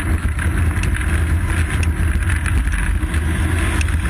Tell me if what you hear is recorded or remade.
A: recorded